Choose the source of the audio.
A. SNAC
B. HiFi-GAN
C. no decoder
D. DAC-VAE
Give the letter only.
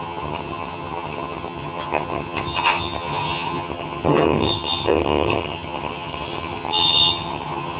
B